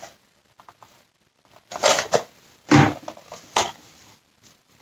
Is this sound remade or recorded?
recorded